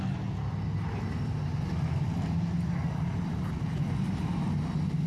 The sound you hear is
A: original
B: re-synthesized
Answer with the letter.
A